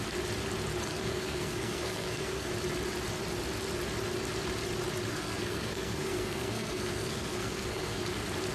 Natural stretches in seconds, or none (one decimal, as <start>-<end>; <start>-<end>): 0.0-0.9; 2.5-5.1; 8.0-8.5